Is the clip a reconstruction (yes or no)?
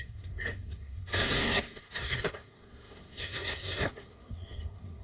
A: yes